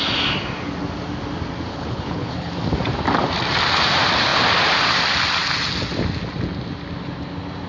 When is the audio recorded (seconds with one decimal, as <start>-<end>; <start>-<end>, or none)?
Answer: 0.0-1.7; 2.5-7.7